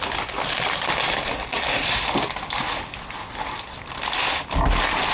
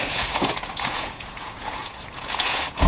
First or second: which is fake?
second